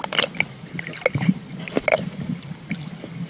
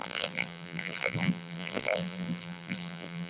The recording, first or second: first